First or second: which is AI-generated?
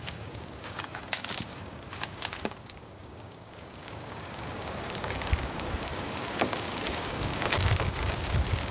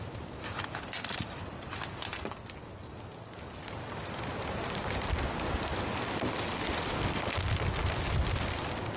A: first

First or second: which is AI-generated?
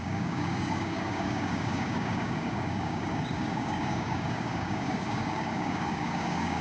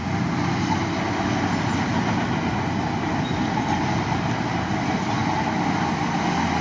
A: first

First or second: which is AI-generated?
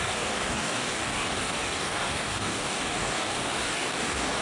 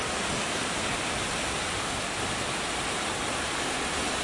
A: first